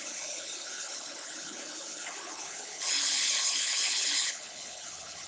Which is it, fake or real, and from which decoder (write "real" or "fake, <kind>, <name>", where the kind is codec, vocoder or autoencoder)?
fake, codec, HILCodec